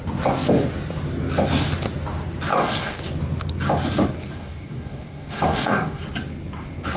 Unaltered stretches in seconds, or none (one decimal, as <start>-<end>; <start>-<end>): 0.0-2.5; 3.1-4.3; 6.0-7.0